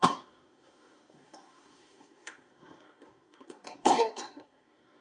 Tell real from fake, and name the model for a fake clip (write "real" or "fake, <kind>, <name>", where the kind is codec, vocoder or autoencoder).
fake, codec, SNAC